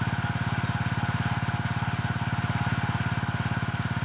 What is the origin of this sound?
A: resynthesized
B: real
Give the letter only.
B